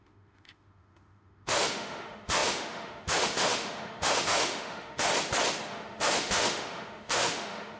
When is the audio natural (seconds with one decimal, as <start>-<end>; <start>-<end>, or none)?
5.1-5.7